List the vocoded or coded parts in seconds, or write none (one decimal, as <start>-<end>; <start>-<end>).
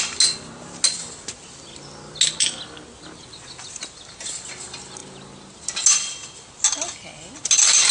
none